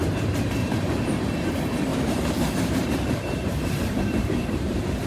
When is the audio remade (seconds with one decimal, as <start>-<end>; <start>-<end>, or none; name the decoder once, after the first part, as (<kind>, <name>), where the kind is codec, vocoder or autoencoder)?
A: 0.6-1.2 (vocoder, BigVGAN v2); 1.9-5.1